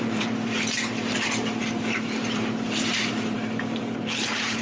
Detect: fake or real fake